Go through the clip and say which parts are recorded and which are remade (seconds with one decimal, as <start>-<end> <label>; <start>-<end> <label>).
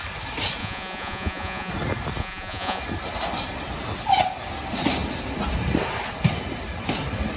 0.0-0.6 recorded; 0.6-1.7 remade; 1.7-2.2 recorded; 2.2-2.8 remade; 2.8-7.4 recorded